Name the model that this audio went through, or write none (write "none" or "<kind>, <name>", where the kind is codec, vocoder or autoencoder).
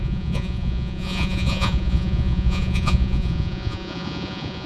vocoder, Vocos